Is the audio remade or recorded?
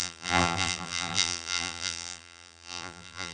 remade